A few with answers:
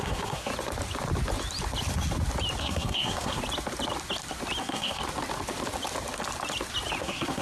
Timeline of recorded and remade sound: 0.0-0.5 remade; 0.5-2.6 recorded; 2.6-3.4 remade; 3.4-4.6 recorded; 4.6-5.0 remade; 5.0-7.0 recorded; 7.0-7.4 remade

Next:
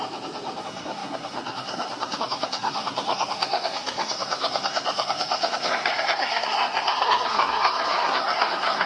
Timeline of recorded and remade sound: 0.0-0.6 recorded; 0.6-8.9 remade

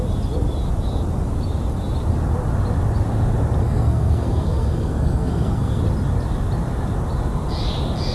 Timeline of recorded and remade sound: 0.0-3.6 recorded; 3.6-5.8 remade; 5.8-8.1 recorded